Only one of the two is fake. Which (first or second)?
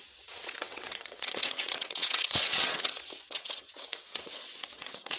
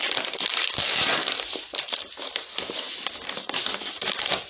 first